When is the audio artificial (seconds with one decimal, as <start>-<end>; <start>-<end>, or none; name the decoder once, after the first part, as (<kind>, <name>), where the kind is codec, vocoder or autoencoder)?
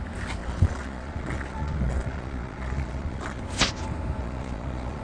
0.4-3.4 (vocoder, Vocos); 4.2-5.0